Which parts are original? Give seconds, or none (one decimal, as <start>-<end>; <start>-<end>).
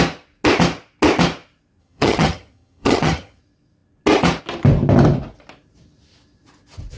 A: 0.0-1.8; 3.4-7.0